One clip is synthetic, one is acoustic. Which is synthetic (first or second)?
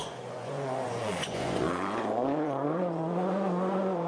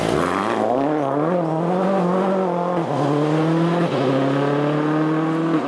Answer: first